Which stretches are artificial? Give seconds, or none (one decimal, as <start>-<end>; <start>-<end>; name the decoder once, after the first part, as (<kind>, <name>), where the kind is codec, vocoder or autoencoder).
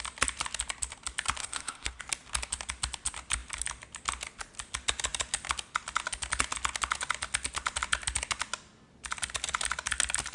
1.4-2.0 (codec, SNAC)